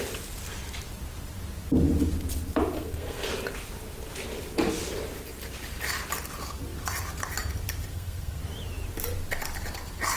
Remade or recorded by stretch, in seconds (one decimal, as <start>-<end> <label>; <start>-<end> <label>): 0.0-2.7 recorded; 2.7-3.3 remade; 3.3-7.9 recorded; 7.9-8.4 remade; 8.4-10.2 recorded